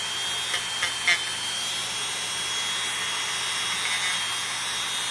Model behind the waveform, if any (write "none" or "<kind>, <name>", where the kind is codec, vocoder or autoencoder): none